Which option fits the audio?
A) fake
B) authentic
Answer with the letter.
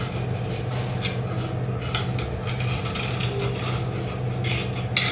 B